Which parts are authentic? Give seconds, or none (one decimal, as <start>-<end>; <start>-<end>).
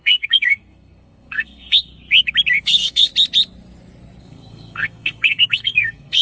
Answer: 1.9-2.6; 3.1-4.2